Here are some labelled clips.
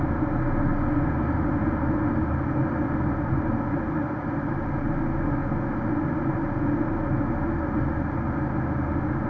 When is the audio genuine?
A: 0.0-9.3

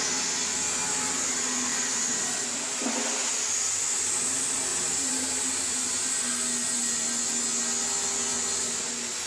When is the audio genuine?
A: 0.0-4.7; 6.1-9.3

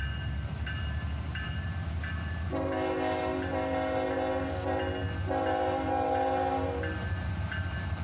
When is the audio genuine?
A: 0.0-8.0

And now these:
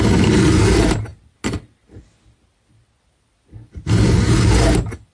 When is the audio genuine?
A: 0.0-5.1

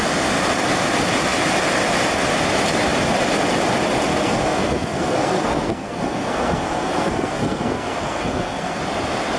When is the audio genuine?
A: 0.0-4.1; 8.8-9.4